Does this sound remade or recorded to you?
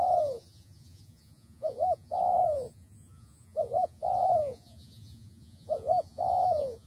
remade